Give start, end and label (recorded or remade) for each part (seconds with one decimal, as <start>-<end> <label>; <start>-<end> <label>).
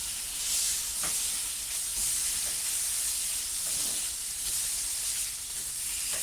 0.0-1.5 remade; 1.5-3.3 recorded; 3.3-6.2 remade